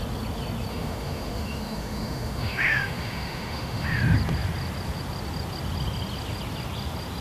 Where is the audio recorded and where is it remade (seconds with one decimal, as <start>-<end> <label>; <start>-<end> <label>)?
0.0-0.7 recorded; 0.7-4.0 remade; 4.0-7.2 recorded